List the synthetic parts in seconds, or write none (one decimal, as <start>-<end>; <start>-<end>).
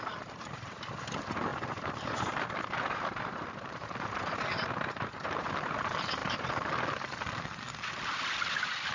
1.5-5.7; 6.2-6.8